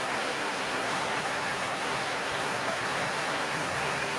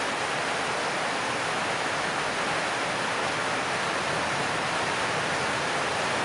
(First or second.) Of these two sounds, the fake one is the first